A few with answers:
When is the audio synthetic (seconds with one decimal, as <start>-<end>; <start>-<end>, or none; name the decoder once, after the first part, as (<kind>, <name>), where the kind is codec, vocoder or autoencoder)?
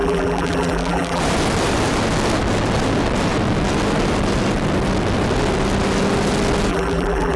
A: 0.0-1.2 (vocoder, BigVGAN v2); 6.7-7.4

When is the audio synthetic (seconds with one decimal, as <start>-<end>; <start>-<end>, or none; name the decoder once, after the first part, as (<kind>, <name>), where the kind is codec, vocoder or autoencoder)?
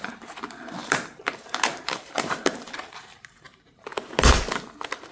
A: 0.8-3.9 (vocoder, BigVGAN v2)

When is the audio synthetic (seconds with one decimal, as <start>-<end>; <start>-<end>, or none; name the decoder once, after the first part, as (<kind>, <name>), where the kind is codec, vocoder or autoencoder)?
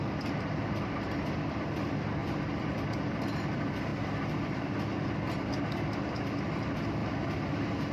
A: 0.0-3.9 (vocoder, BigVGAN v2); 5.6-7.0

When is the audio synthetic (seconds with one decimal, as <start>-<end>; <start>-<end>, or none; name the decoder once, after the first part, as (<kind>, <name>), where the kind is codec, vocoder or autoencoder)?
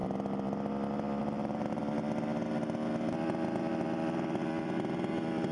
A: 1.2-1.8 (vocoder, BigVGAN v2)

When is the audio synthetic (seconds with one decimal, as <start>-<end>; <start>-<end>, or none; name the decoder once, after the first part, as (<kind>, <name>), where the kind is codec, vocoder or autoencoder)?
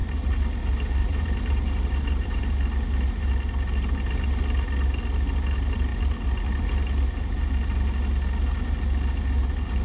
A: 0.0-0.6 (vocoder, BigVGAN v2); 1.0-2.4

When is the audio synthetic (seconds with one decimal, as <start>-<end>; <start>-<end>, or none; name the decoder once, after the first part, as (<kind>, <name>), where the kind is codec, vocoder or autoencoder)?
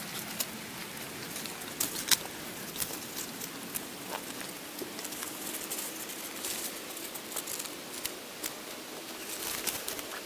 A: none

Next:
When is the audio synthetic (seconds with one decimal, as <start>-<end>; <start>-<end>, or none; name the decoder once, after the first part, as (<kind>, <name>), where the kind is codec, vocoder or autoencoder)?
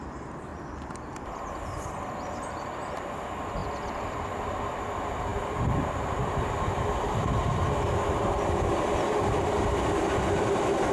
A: 0.0-10.9 (vocoder, BigVGAN v2)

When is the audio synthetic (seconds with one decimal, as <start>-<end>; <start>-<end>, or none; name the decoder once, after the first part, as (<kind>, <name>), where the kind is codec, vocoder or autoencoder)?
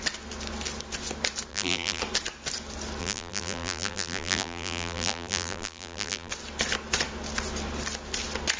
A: 1.5-2.0 (vocoder, BigVGAN v2); 3.0-6.3